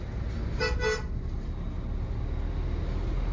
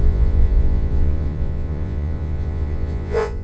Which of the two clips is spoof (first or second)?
second